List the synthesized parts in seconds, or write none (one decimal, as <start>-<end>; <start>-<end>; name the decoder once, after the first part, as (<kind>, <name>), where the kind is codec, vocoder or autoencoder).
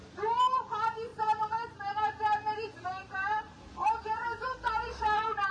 1.1-4.4 (vocoder, BigVGAN v2)